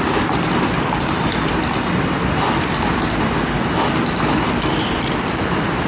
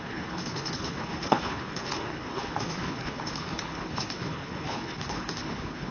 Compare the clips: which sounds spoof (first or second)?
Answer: second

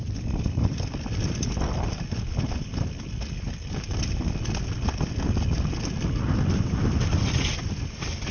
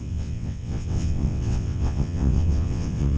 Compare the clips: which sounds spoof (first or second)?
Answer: second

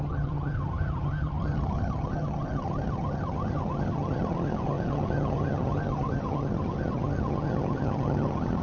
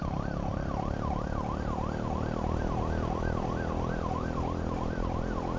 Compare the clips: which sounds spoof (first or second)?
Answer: first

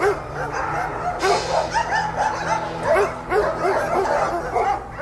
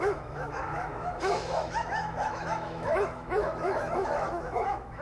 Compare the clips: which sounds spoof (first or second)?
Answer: second